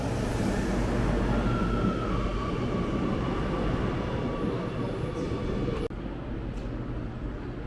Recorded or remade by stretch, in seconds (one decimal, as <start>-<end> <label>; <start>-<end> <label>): 0.0-7.7 recorded